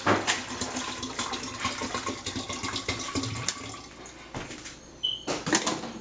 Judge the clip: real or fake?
real